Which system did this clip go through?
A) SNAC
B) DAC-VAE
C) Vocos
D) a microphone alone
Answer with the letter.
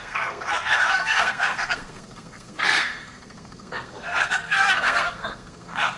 A